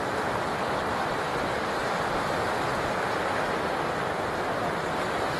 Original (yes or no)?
yes